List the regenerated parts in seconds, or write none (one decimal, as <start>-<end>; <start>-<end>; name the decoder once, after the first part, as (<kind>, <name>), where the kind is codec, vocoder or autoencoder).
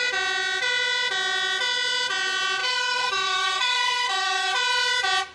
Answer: 2.6-4.5 (codec, DAC)